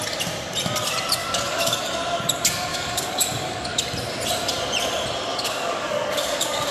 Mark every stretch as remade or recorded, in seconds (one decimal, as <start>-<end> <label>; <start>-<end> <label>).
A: 0.0-1.2 recorded; 1.2-2.2 remade; 2.2-2.7 recorded; 2.7-3.8 remade; 3.8-5.3 recorded; 5.3-6.7 remade